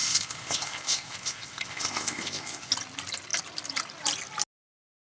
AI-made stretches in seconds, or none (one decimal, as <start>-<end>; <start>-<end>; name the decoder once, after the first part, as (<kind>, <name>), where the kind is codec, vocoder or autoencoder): 0.0-2.7 (codec, ZipCodec)